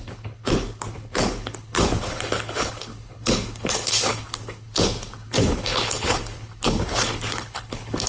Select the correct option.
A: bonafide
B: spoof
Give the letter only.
B